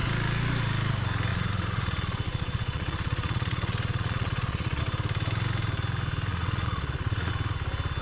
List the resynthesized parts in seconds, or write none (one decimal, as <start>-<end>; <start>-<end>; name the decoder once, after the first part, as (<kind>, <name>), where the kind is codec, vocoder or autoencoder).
1.3-4.8 (vocoder, Vocos); 6.3-7.3